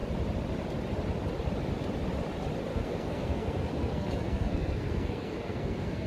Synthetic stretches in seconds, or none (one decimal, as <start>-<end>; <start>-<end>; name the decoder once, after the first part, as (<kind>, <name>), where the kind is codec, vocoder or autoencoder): 2.7-6.1 (codec, SNAC)